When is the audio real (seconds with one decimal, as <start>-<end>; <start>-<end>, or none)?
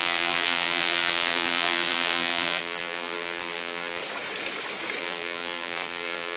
4.0-5.0